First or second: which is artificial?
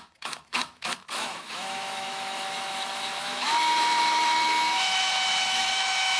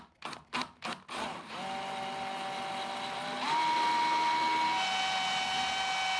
first